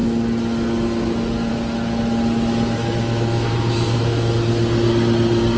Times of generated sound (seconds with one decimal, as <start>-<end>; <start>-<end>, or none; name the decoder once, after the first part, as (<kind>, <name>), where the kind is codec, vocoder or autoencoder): 2.8-4.3 (autoencoder, DAC-VAE)